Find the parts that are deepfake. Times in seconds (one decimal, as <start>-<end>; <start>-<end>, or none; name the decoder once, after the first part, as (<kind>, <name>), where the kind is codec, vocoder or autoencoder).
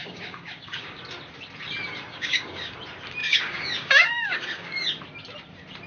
0.0-1.0 (codec, DAC); 2.1-2.7; 3.2-5.0